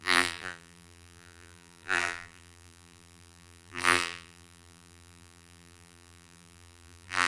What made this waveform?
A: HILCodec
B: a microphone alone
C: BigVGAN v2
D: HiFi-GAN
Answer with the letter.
C